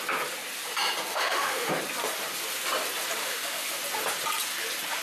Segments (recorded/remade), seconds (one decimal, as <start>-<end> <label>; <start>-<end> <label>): 0.0-1.1 recorded; 1.1-1.7 remade; 1.7-3.2 recorded; 3.2-3.8 remade; 3.8-5.0 recorded